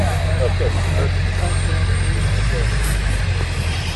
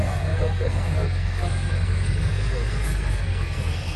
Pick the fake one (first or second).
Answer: second